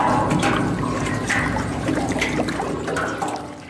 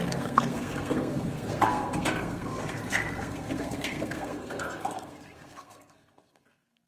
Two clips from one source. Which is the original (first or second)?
first